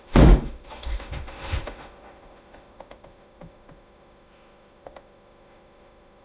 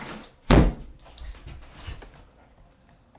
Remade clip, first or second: first